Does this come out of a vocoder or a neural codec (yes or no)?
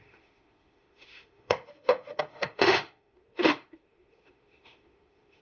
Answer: yes